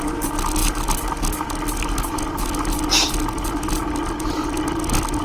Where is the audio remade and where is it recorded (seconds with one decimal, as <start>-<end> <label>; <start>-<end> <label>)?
0.0-5.2 recorded